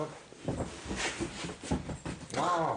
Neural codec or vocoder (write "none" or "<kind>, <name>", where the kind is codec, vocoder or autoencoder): none